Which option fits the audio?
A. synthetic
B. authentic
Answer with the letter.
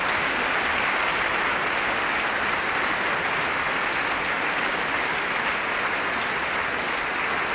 B